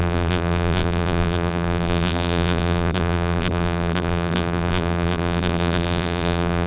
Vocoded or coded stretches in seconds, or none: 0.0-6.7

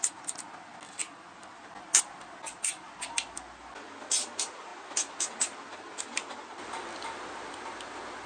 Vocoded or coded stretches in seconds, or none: none